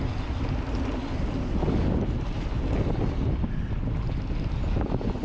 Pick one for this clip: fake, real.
real